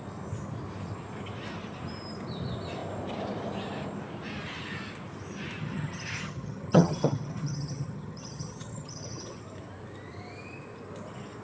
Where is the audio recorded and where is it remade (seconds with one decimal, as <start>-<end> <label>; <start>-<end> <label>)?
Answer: 0.0-5.6 recorded; 5.6-9.4 remade; 9.4-11.4 recorded